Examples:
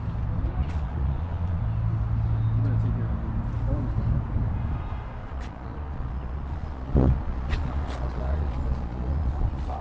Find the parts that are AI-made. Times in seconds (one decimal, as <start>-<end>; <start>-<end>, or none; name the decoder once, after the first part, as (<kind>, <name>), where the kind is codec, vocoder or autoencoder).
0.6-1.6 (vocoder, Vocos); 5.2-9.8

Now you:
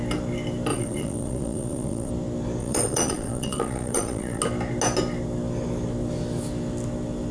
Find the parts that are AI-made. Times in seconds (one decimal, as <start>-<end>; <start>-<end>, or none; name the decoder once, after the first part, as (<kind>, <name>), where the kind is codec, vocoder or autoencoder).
0.7-2.1 (vocoder, Vocos); 2.6-4.4

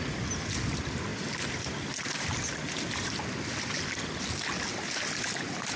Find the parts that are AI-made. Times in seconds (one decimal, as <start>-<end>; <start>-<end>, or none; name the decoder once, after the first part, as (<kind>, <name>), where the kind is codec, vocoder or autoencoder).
none